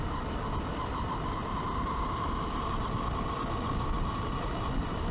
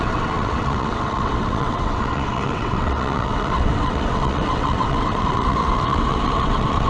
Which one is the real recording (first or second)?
first